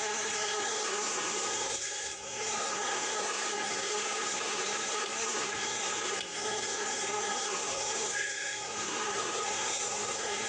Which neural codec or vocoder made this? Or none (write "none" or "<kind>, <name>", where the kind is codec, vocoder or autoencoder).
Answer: codec, SNAC